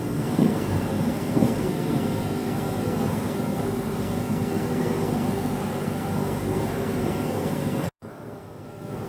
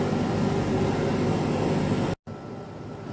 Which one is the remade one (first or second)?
first